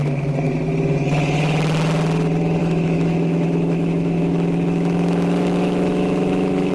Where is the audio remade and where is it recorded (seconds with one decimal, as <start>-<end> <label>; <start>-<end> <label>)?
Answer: 0.0-2.6 recorded; 2.6-6.7 remade